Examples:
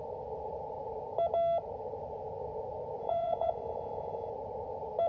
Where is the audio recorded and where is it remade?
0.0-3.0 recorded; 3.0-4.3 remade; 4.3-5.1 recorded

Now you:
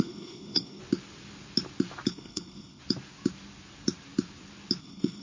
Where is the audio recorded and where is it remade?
0.0-0.8 remade; 0.8-2.1 recorded; 2.1-2.8 remade; 2.8-4.8 recorded; 4.8-5.2 remade

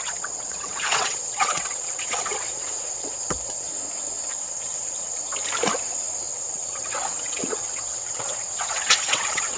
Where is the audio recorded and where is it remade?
0.0-3.7 remade; 3.7-4.4 recorded; 4.4-5.3 remade; 5.3-6.2 recorded; 6.2-9.6 remade

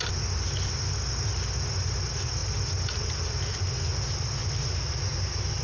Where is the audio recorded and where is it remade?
0.0-4.4 recorded; 4.4-4.9 remade; 4.9-5.6 recorded

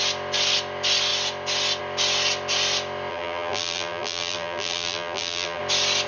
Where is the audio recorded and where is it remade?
0.0-3.1 recorded; 3.1-5.6 remade; 5.6-6.1 recorded

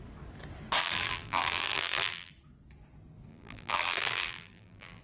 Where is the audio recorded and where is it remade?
0.0-0.8 recorded; 0.8-2.3 remade; 2.3-3.3 recorded; 3.3-5.0 remade

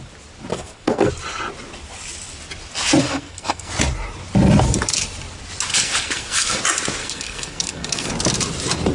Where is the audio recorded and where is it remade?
0.0-0.5 recorded; 0.5-1.1 remade; 1.1-3.0 recorded; 3.0-3.7 remade; 3.7-5.7 recorded; 5.7-6.6 remade; 6.6-7.0 recorded; 7.0-8.1 remade; 8.1-8.9 recorded

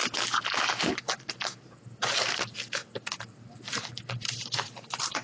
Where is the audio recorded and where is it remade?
0.0-3.1 recorded; 3.1-5.2 remade